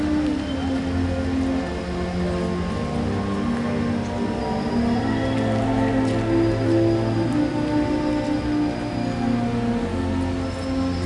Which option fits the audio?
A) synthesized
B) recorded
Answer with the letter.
B